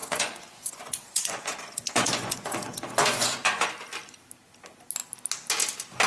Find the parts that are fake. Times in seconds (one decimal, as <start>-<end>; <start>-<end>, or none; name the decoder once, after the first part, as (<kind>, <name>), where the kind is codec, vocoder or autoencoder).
0.0-3.7 (vocoder, Vocos)